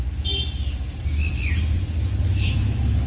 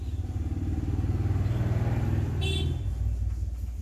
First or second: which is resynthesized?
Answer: first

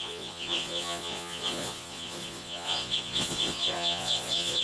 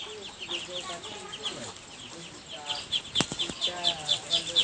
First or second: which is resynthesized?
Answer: first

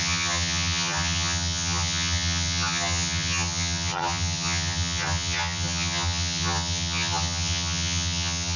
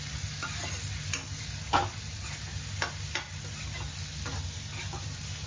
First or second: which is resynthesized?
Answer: first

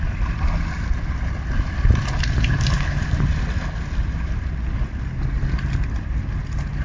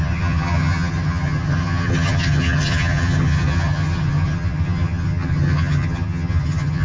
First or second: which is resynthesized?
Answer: second